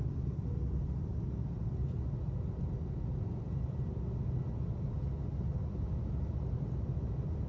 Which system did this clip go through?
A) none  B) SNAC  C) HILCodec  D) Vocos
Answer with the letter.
A